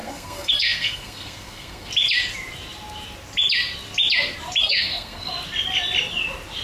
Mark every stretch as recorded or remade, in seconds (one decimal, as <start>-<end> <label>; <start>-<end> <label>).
0.0-1.9 remade; 1.9-4.6 recorded; 4.6-5.3 remade; 5.3-6.6 recorded